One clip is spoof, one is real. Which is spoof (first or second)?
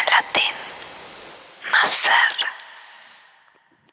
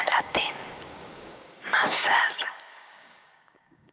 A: second